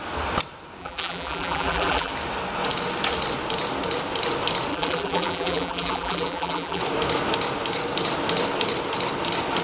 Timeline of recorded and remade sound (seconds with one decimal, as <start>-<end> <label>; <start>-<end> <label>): 0.0-0.8 recorded; 0.8-2.1 remade; 2.1-4.7 recorded; 4.7-6.8 remade; 6.8-9.6 recorded